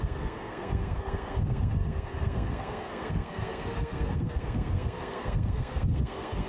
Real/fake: fake